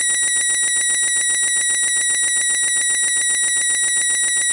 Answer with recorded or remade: recorded